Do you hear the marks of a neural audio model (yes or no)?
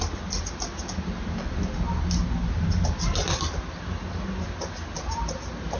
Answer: no